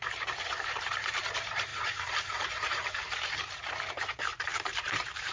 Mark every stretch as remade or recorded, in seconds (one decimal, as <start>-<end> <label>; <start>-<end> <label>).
0.0-5.3 remade